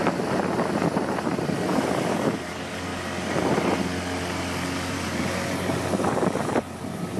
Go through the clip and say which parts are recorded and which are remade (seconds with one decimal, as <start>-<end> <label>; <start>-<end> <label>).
0.0-2.9 remade; 2.9-4.9 recorded; 4.9-7.2 remade